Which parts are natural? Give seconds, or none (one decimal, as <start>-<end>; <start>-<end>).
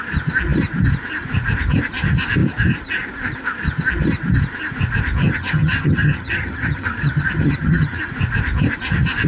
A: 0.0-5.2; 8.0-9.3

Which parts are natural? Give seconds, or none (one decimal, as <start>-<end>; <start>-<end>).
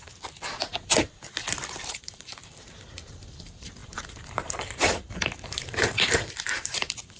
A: 0.7-1.9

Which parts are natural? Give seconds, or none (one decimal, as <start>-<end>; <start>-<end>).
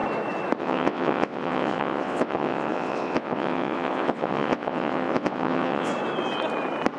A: 0.0-0.6; 5.9-7.0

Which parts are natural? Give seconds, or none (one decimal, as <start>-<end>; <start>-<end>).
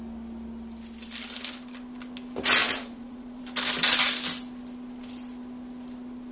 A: 0.0-2.6; 3.4-6.3